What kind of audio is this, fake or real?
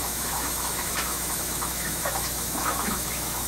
fake